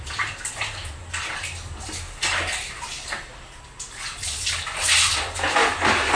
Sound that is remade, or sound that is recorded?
recorded